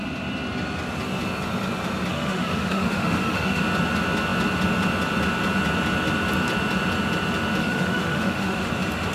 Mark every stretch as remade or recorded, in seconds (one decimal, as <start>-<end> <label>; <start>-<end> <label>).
0.0-2.1 recorded; 2.1-3.6 remade; 3.6-7.6 recorded; 7.6-8.7 remade; 8.7-9.1 recorded